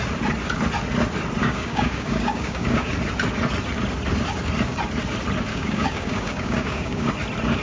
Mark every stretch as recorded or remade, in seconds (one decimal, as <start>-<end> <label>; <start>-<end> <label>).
0.0-1.4 recorded; 1.4-2.9 remade; 2.9-5.5 recorded; 5.5-7.1 remade; 7.1-7.6 recorded